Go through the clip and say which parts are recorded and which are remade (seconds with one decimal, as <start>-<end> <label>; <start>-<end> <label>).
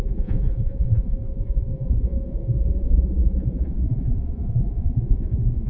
0.0-5.7 remade